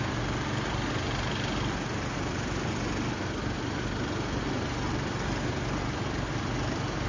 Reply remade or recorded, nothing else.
recorded